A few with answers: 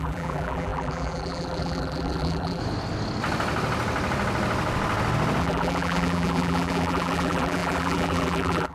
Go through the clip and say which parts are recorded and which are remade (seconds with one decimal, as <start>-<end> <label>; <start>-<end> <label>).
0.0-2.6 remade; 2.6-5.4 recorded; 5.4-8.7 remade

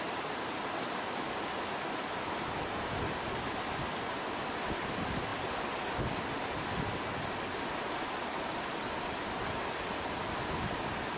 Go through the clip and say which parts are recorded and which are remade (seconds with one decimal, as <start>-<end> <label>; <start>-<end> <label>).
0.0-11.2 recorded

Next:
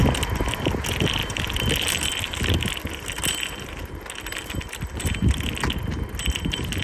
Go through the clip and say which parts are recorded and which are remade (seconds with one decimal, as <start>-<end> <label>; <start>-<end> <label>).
0.0-6.8 recorded

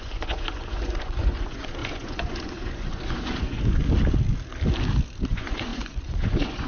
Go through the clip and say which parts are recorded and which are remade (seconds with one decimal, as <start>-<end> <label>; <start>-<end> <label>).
0.0-3.8 remade; 3.8-5.3 recorded; 5.3-6.7 remade

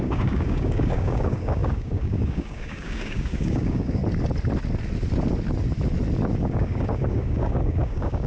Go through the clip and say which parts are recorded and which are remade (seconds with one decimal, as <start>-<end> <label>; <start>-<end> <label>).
0.0-4.0 remade; 4.0-6.4 recorded; 6.4-8.3 remade

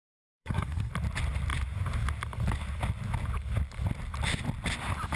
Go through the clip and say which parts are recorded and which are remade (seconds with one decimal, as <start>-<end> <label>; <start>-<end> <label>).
0.0-0.9 remade; 0.9-5.2 recorded